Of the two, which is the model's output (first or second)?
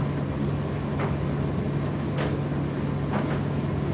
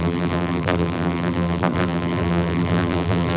second